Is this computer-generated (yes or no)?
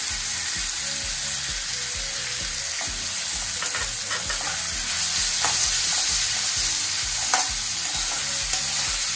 no